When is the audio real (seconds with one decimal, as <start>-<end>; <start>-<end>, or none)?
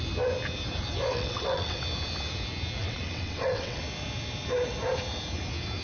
0.0-1.1; 1.8-2.8; 3.8-5.8